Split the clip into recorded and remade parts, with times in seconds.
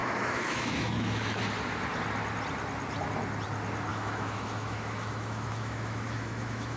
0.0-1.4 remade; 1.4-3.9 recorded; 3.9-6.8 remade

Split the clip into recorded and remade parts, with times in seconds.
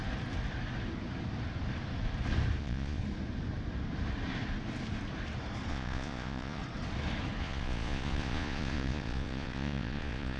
0.0-2.6 recorded; 2.6-3.0 remade; 3.0-5.7 recorded; 5.7-6.6 remade; 6.6-7.4 recorded; 7.4-10.4 remade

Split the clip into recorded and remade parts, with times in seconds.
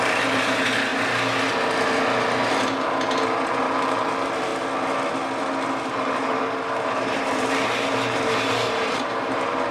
0.0-0.9 remade; 0.9-3.6 recorded; 3.6-4.5 remade; 4.5-5.9 recorded; 5.9-9.7 remade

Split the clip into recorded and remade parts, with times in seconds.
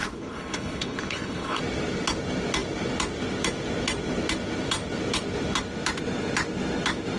0.0-1.6 remade; 1.6-7.2 recorded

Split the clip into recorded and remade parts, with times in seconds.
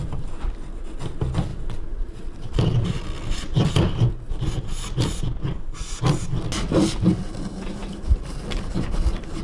0.0-1.5 recorded; 1.5-6.0 remade; 6.0-7.8 recorded; 7.8-8.6 remade; 8.6-9.4 recorded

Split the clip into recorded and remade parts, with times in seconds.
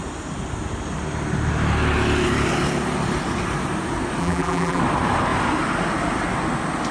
0.0-4.2 recorded; 4.2-4.8 remade; 4.8-6.9 recorded